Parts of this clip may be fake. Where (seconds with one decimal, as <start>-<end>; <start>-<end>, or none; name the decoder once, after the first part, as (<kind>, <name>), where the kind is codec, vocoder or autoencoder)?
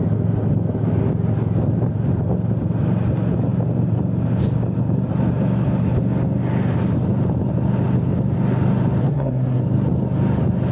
9.0-9.6 (codec, SNAC)